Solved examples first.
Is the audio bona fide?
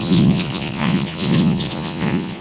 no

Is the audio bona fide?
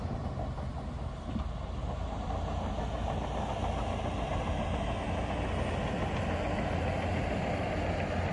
yes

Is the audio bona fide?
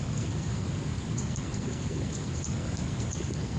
no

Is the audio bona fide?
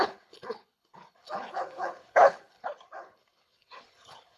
no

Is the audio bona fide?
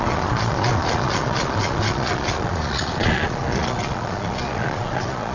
no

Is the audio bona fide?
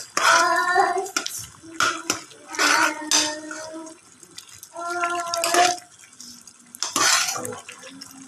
yes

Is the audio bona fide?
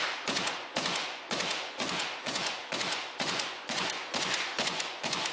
no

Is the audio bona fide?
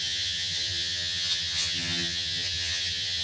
no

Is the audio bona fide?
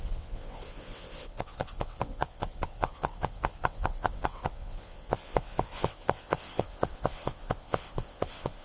no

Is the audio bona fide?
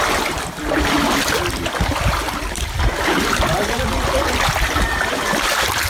yes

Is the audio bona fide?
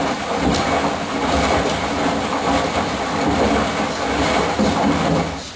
yes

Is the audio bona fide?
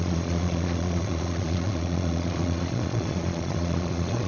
no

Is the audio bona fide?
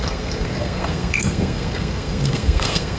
no